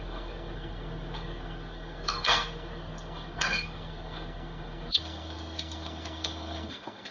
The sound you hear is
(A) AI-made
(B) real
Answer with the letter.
A